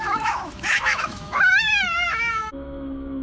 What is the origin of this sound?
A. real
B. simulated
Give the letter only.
B